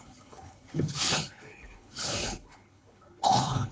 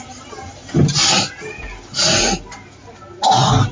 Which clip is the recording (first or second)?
second